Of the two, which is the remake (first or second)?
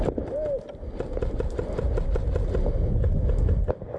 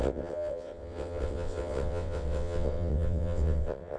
second